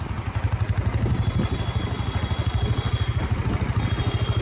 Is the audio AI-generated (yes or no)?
no